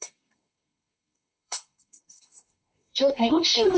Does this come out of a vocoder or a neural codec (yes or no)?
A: yes